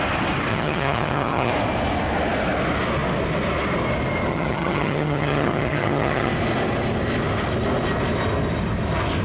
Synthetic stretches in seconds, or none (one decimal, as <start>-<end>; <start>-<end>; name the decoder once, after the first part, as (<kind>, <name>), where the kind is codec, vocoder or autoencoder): 0.5-1.5 (vocoder, HiFi-GAN); 4.3-6.3